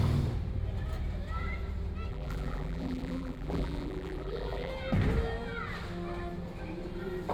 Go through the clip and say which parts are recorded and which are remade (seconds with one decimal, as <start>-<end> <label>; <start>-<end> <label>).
0.0-2.1 recorded; 2.1-4.7 remade; 4.7-7.3 recorded